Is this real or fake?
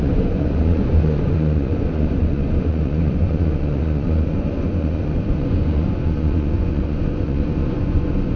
fake